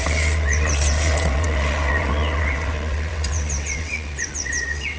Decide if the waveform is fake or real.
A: fake